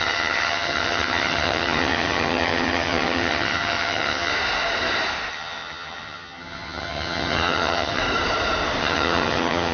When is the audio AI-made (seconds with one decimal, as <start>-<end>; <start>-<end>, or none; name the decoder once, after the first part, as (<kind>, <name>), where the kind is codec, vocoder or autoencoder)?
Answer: 0.0-4.3 (vocoder, HiFi-GAN); 5.3-8.0; 8.8-9.7